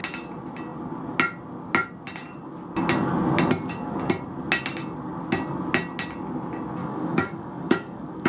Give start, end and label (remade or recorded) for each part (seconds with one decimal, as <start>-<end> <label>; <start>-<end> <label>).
0.0-6.8 recorded; 6.8-8.3 remade